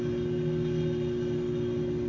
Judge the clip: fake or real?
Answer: real